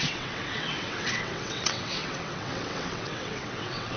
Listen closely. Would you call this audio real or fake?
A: fake